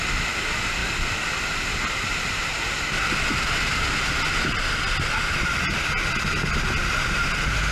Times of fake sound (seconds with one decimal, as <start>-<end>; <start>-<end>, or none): none